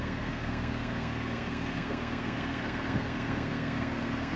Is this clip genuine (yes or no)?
no